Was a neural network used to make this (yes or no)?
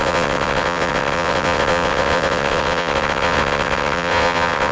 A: yes